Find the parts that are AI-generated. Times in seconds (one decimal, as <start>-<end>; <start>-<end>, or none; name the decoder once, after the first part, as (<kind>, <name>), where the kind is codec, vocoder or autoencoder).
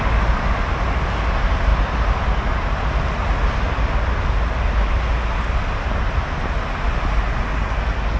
none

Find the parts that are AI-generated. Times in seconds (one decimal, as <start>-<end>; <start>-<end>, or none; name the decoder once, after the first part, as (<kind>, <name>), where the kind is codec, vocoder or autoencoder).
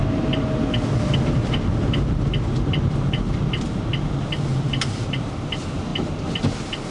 4.5-5.3 (vocoder, BigVGAN v2)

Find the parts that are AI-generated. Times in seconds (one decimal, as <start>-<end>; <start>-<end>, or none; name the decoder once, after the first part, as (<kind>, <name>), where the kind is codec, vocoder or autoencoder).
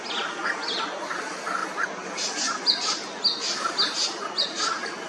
none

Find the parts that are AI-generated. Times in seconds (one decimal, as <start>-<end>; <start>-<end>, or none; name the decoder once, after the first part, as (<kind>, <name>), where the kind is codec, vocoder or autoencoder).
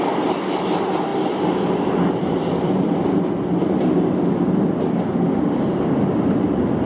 none